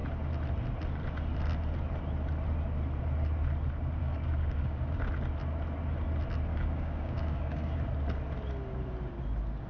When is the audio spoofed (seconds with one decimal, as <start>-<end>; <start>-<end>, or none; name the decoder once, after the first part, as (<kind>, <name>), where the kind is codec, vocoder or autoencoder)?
4.0-5.1 (codec, DAC); 6.5-7.8